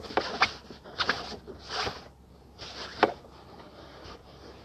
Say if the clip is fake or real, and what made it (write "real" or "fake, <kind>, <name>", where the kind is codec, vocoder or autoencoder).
real